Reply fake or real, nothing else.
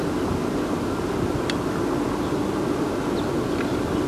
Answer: real